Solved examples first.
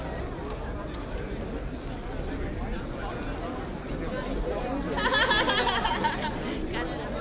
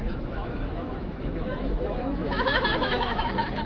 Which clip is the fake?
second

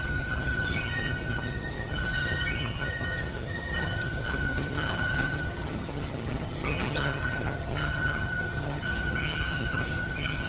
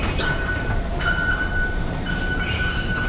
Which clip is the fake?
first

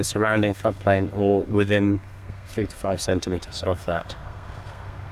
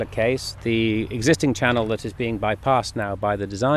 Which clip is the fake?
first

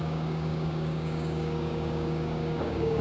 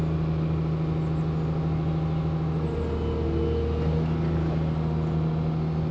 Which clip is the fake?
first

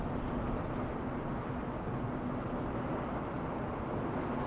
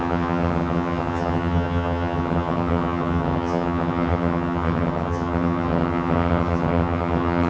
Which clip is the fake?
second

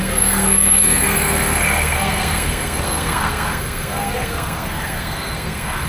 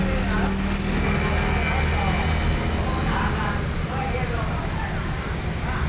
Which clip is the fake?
first